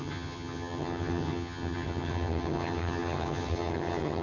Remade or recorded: remade